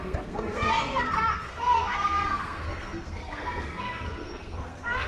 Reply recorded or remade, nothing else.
remade